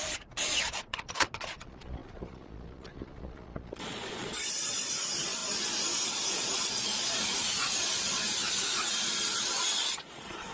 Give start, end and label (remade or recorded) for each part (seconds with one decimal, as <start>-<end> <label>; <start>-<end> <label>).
0.0-10.5 remade